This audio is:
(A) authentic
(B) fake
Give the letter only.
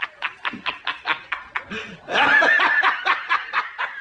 A